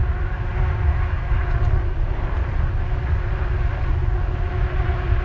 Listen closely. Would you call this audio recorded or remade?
recorded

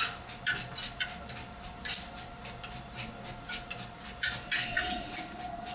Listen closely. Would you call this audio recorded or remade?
recorded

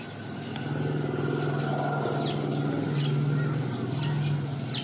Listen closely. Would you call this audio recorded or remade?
recorded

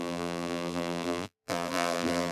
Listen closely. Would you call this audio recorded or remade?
remade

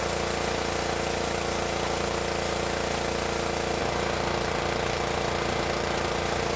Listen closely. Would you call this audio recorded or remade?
recorded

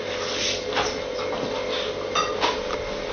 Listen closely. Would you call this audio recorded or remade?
recorded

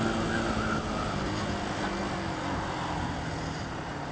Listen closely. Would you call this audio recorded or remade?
recorded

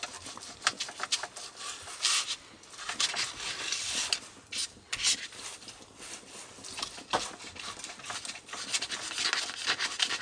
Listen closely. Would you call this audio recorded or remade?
recorded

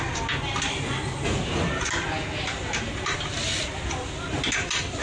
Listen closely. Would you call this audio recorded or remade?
recorded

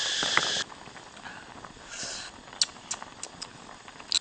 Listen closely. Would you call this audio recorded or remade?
recorded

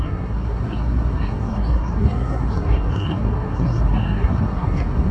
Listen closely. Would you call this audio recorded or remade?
remade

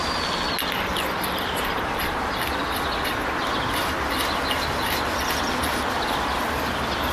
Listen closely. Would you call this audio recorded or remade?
recorded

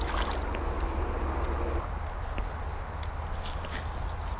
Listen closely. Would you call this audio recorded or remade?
recorded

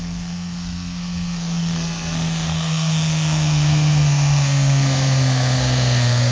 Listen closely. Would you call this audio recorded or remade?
remade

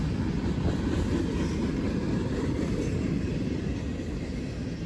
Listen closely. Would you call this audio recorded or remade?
recorded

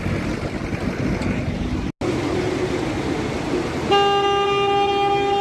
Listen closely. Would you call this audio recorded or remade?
recorded